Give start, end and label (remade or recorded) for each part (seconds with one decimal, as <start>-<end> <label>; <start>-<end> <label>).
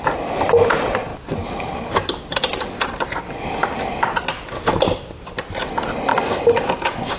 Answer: 0.0-6.1 recorded; 6.1-7.2 remade